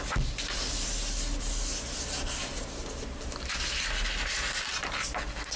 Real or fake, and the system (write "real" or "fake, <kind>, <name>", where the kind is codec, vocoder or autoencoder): real